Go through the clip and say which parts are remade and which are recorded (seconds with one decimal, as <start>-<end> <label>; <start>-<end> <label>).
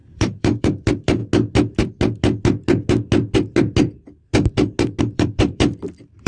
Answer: 0.0-1.2 remade; 1.2-5.0 recorded; 5.0-6.3 remade